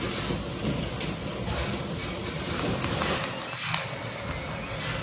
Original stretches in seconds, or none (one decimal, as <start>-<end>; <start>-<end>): 0.0-5.0